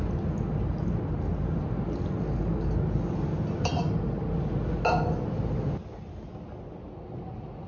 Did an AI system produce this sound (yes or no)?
no